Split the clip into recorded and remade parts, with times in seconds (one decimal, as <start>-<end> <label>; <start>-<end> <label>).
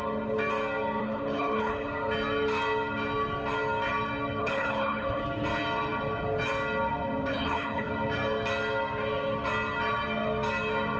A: 0.0-1.0 recorded; 1.0-1.9 remade; 1.9-4.4 recorded; 4.4-5.2 remade; 5.2-7.3 recorded; 7.3-7.9 remade; 7.9-11.0 recorded